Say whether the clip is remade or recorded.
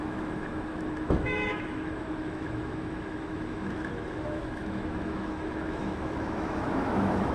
remade